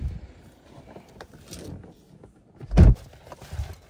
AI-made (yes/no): no